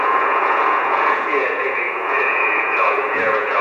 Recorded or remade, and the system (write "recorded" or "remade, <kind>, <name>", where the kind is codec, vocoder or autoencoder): remade, vocoder, Vocos